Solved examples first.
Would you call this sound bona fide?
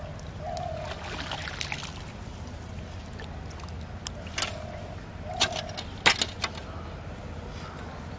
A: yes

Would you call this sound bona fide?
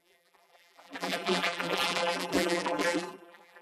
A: no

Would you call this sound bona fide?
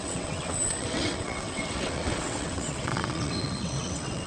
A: no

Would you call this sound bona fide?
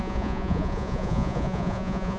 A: no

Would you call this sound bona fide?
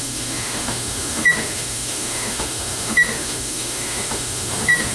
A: no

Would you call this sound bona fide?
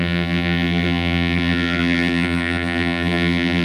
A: no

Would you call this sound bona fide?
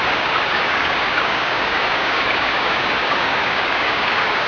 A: no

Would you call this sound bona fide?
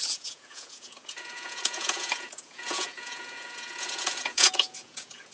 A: no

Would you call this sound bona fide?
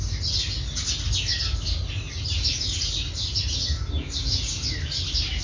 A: yes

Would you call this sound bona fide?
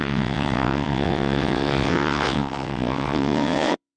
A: no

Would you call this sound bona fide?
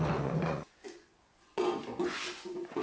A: no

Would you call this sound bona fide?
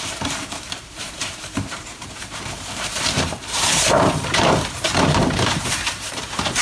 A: no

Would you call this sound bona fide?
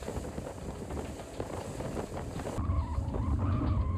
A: yes